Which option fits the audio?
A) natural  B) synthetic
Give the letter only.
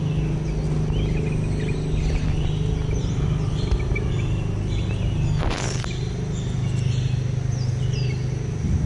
A